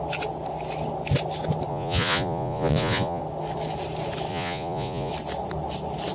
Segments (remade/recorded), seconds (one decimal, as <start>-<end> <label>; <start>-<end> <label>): 0.0-1.7 recorded; 1.7-3.2 remade; 3.2-4.3 recorded; 4.3-5.1 remade; 5.1-6.1 recorded